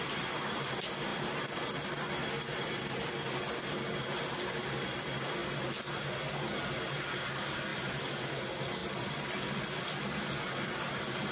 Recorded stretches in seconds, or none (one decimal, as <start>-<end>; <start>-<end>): 0.0-7.7; 8.3-8.8; 9.8-11.3